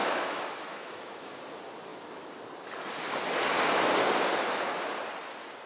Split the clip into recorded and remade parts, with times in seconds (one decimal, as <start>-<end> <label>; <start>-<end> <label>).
0.0-1.4 remade; 1.4-5.7 recorded